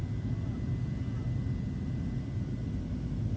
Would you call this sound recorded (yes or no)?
yes